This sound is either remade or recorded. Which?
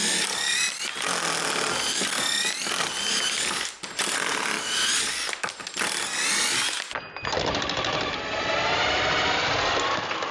recorded